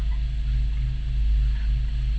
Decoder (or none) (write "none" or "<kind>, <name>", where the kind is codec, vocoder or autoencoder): none